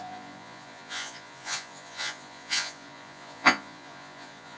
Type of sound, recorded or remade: remade